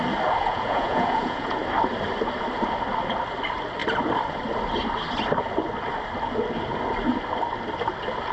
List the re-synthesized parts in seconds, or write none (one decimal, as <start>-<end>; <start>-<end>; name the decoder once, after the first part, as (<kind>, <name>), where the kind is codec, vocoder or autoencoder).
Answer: 0.4-1.6 (vocoder, Vocos)